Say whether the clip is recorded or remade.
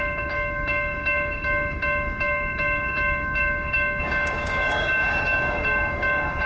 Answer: remade